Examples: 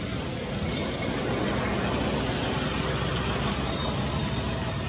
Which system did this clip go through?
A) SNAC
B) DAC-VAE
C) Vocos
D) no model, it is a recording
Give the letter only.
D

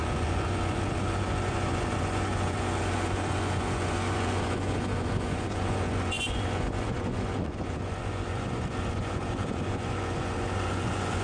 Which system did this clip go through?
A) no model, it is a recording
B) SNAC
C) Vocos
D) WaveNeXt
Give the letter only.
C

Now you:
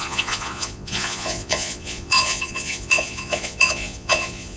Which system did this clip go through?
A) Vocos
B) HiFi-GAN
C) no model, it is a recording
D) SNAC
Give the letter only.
A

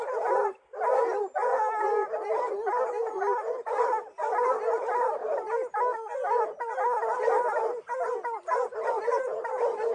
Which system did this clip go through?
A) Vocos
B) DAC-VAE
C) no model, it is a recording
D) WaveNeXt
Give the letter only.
C